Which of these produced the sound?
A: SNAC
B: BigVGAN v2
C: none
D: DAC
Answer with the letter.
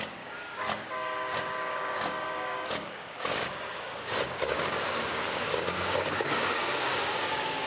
D